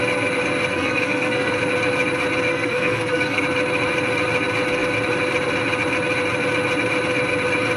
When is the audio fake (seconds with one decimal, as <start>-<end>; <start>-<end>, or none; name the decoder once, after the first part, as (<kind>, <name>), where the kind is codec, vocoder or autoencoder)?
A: 0.7-1.5 (codec, SNAC); 2.5-3.4